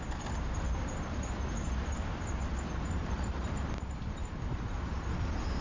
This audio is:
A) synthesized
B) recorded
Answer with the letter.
A